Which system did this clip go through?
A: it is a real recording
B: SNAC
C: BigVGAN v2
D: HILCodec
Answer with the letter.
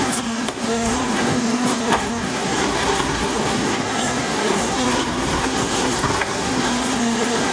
B